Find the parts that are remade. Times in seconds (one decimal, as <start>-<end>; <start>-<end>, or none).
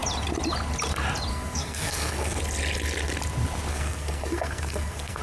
1.3-2.4; 3.7-5.2